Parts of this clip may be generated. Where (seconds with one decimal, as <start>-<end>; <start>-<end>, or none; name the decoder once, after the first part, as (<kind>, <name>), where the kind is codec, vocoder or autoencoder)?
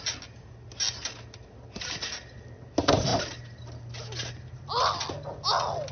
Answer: none